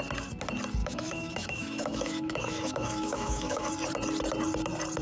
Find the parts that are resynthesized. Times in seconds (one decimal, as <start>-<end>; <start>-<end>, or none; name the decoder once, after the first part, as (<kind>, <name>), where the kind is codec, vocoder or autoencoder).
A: 0.8-3.7 (autoencoder, DAC-VAE)